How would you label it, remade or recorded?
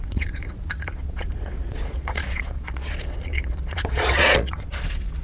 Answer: remade